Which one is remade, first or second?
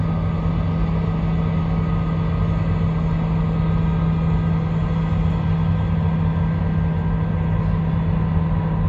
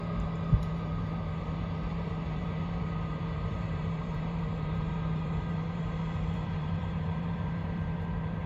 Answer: second